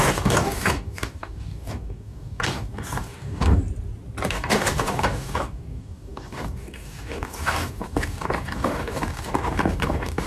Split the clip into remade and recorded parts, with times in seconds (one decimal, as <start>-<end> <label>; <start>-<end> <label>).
0.0-3.6 remade; 3.6-4.3 recorded; 4.3-10.3 remade

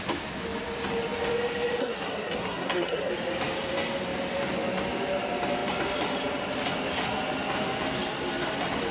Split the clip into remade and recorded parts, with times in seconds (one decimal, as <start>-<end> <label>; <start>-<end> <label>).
0.0-1.8 recorded; 1.8-3.1 remade; 3.1-8.9 recorded

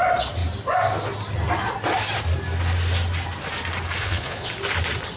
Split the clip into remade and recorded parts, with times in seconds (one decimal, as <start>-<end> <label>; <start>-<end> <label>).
0.0-4.0 recorded; 4.0-4.5 remade; 4.5-5.2 recorded